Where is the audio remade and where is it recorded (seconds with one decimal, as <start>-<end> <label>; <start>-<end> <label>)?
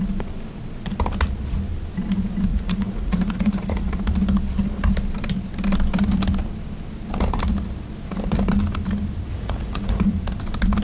0.0-2.5 recorded; 2.5-3.9 remade; 3.9-9.3 recorded; 9.3-10.0 remade; 10.0-10.8 recorded